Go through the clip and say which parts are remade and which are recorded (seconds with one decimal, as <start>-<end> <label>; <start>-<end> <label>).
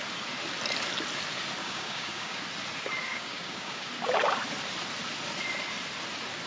0.0-1.6 recorded; 1.6-2.4 remade; 2.4-3.1 recorded; 3.1-3.9 remade; 3.9-6.5 recorded